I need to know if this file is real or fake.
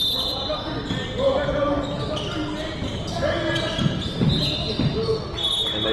real